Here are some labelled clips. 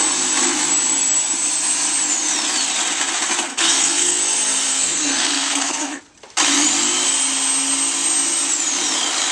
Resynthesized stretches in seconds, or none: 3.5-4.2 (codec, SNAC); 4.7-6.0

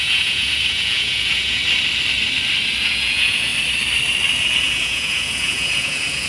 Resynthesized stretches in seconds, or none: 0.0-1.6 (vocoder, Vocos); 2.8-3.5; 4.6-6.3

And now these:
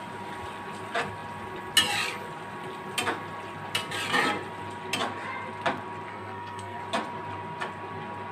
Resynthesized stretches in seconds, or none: 6.1-6.8 (codec, SNAC)

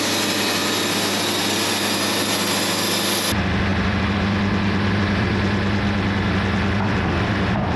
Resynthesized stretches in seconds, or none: none

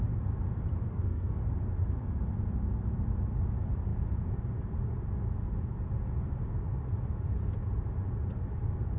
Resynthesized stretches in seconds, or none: 0.9-1.4 (codec, SNAC)

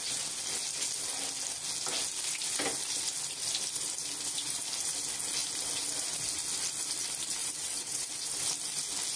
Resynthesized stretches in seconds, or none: 7.4-8.1 (vocoder, WaveNeXt)